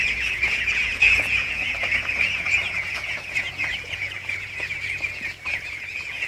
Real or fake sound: fake